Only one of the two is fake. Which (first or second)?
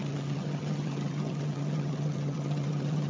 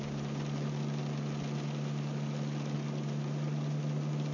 first